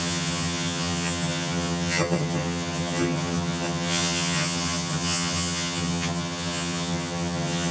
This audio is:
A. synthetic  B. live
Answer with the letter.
A